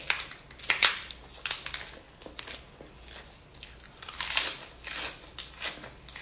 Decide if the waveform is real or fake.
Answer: real